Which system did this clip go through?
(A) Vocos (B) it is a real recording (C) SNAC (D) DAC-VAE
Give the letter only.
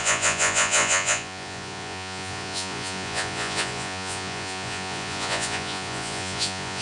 A